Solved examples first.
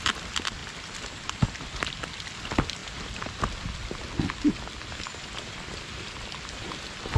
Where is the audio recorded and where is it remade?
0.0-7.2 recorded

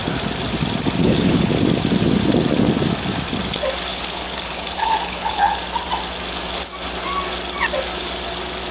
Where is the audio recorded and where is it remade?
0.0-1.0 recorded; 1.0-1.5 remade; 1.5-3.9 recorded; 3.9-5.6 remade; 5.6-8.7 recorded

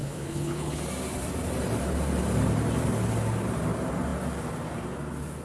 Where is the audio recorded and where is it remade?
0.0-0.8 remade; 0.8-5.4 recorded

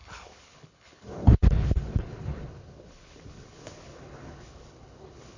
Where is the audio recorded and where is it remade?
0.0-5.4 remade

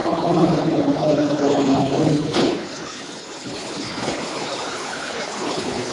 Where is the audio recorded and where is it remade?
0.0-5.9 remade

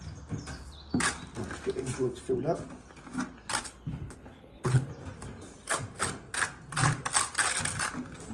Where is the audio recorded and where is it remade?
0.0-3.6 recorded; 3.6-4.9 remade; 4.9-8.3 recorded

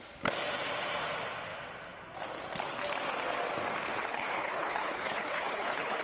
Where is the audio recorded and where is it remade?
0.0-4.1 recorded; 4.1-6.0 remade